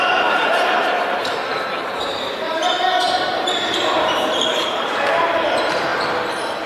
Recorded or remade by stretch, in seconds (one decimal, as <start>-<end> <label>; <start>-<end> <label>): 0.0-5.9 remade; 5.9-6.7 recorded

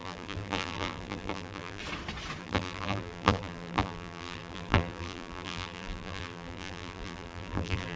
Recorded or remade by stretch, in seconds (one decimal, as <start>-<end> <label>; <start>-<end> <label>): 0.0-1.8 remade; 1.8-2.4 recorded; 2.4-8.0 remade